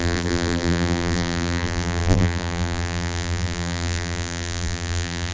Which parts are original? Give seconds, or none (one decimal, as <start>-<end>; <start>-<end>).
none